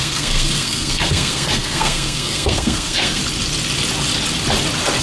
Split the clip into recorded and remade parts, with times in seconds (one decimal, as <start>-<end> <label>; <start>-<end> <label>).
0.0-3.2 remade; 3.2-5.0 recorded